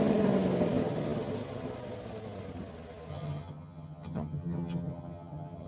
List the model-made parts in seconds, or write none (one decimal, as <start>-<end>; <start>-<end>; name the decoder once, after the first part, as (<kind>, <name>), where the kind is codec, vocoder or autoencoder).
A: 3.1-5.7 (vocoder, HiFi-GAN)